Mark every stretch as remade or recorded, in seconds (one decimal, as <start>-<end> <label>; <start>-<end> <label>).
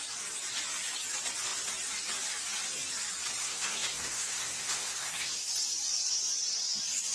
0.0-3.4 recorded; 3.4-5.5 remade; 5.5-7.1 recorded